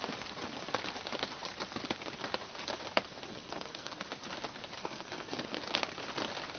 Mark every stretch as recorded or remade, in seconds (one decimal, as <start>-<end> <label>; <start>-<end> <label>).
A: 0.0-3.3 recorded; 3.3-4.0 remade; 4.0-4.8 recorded; 4.8-5.6 remade; 5.6-6.6 recorded